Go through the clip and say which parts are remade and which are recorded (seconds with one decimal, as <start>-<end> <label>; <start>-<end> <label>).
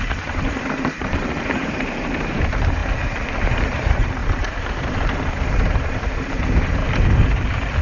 0.0-2.8 remade; 2.8-3.5 recorded; 3.5-4.2 remade; 4.2-5.8 recorded; 5.8-6.8 remade; 6.8-7.8 recorded